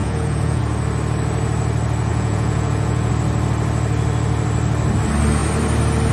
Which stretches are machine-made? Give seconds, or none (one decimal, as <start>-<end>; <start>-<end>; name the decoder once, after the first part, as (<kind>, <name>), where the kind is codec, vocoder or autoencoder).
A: 0.0-0.6 (vocoder, Vocos); 2.1-3.1